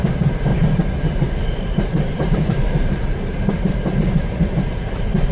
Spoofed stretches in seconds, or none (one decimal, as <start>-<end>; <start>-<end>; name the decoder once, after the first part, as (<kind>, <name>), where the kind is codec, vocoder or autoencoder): 0.5-3.7 (vocoder, BigVGAN v2)